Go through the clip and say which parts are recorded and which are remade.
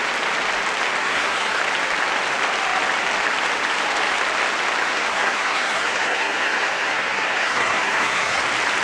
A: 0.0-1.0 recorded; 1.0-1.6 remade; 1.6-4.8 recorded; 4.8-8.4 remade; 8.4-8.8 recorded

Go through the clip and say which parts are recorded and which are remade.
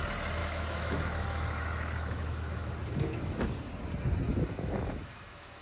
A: 0.0-0.4 recorded; 0.4-3.5 remade; 3.5-4.3 recorded; 4.3-5.6 remade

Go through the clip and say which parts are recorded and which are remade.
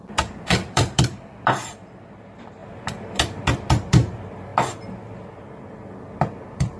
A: 0.0-2.6 remade; 2.6-3.7 recorded; 3.7-4.5 remade; 4.5-6.2 recorded; 6.2-6.8 remade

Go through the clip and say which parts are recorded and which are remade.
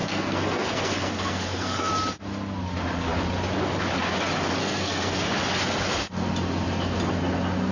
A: 0.0-1.9 remade; 1.9-4.6 recorded; 4.6-5.2 remade; 5.2-7.7 recorded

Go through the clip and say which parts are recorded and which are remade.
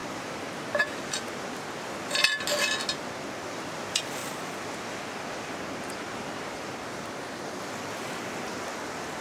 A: 0.0-9.2 recorded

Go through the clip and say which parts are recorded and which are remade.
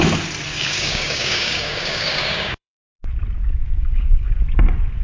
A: 0.0-0.5 recorded; 0.5-3.0 remade; 3.0-3.4 recorded; 3.4-4.4 remade; 4.4-5.0 recorded